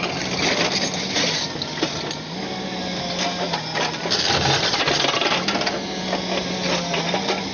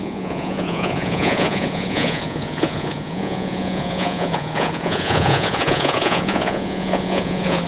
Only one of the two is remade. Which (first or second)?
second